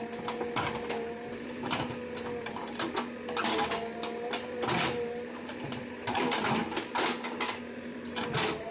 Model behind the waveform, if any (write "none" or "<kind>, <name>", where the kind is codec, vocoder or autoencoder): none